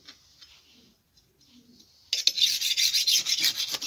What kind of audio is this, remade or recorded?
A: recorded